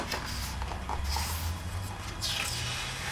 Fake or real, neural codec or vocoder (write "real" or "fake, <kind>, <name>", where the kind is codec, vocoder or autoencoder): real